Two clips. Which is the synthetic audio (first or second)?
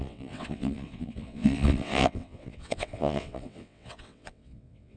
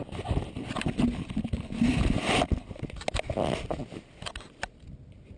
first